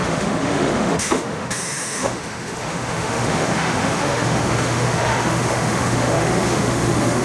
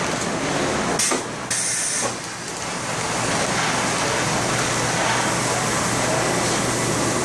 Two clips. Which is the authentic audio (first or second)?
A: second